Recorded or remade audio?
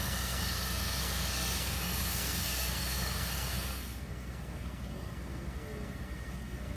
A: remade